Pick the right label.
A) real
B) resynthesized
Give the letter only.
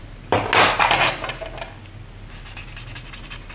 A